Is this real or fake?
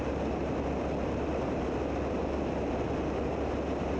real